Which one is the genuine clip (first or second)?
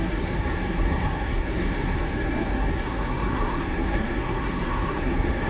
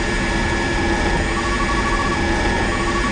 second